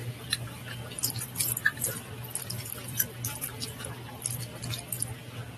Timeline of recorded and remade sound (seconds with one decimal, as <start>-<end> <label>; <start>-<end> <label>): 0.0-1.0 recorded; 1.0-4.4 remade; 4.4-5.6 recorded